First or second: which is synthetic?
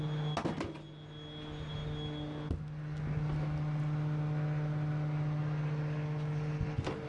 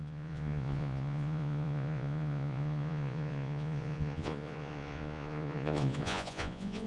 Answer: second